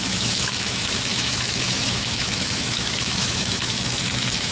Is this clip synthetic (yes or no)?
yes